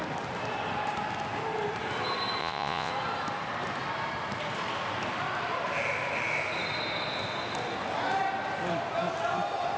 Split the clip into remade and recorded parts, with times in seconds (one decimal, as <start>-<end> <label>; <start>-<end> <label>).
0.0-2.4 recorded; 2.4-2.9 remade; 2.9-9.8 recorded